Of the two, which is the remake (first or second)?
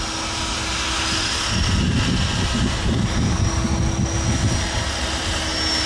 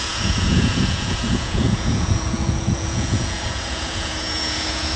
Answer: second